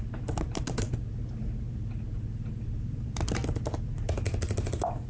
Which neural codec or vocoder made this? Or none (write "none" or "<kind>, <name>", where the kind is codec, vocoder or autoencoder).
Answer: none